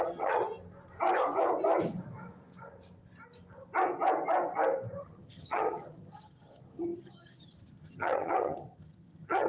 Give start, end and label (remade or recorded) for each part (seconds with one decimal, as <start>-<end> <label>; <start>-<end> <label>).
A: 0.0-0.4 remade; 0.4-5.0 recorded; 5.0-9.5 remade